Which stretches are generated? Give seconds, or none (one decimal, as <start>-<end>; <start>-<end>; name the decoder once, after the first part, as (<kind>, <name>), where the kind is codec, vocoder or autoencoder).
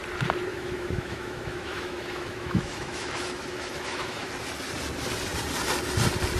0.5-4.3 (autoencoder, DAC-VAE)